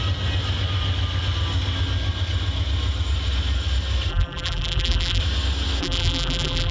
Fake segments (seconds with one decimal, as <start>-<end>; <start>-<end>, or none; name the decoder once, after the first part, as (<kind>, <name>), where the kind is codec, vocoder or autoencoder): 4.1-5.2 (vocoder, BigVGAN v2); 5.8-6.7